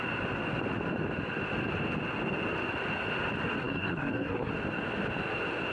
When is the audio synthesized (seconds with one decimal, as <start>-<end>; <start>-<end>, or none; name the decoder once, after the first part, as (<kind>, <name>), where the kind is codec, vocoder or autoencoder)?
3.6-4.5 (codec, SNAC)